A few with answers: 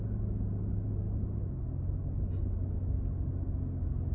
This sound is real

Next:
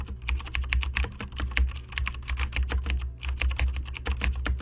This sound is real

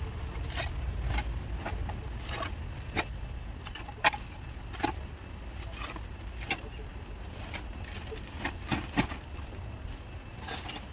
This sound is real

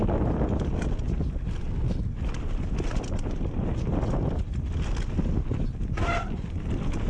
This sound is real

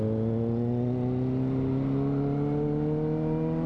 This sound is real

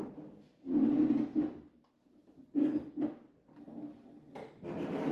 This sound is real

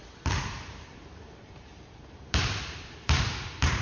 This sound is fake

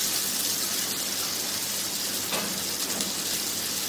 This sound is real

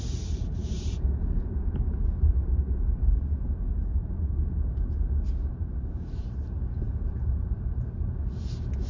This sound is fake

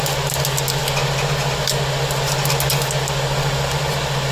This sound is real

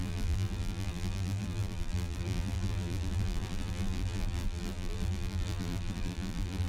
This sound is fake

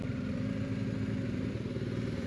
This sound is real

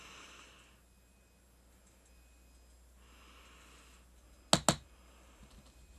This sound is real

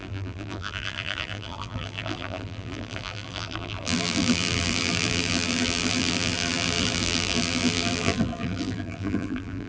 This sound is fake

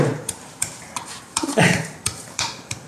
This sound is fake